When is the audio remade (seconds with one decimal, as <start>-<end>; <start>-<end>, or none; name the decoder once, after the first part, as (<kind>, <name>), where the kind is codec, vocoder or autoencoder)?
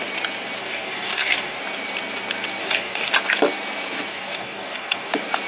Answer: 0.6-1.6 (codec, DAC); 2.6-3.1; 4.1-5.1